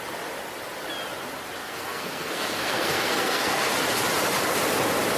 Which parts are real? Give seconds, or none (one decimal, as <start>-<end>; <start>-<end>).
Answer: 0.0-1.6; 3.7-5.2